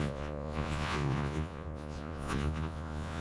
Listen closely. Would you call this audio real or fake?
fake